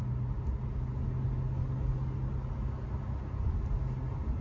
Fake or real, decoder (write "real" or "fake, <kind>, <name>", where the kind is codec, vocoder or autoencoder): real